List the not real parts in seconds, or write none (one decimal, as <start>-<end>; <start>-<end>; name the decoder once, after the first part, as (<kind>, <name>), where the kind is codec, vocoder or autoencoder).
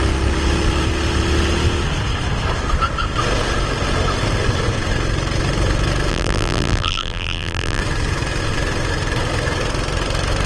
6.1-7.8 (vocoder, BigVGAN v2)